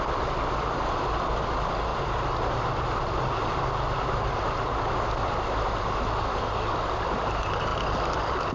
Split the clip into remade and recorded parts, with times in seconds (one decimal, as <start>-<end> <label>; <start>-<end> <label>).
0.0-1.9 recorded; 1.9-3.0 remade; 3.0-8.5 recorded